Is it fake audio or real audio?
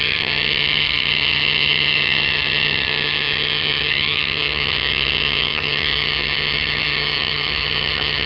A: fake